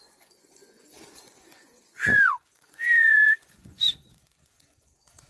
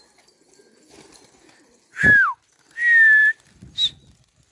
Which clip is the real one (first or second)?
second